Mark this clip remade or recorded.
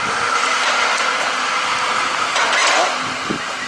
recorded